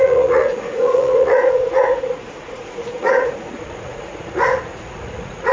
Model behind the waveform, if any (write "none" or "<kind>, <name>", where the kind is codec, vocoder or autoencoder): vocoder, Vocos